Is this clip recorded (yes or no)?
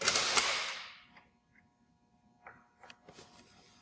yes